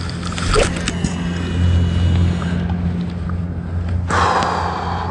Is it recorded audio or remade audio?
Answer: recorded